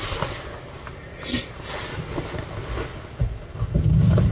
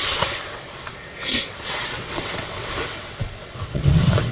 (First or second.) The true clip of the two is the first